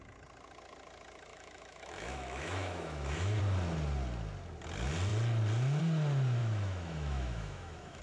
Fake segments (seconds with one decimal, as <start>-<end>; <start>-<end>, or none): 1.3-3.4; 6.4-8.0